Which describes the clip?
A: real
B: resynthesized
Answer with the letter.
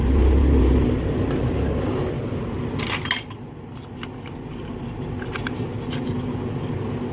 A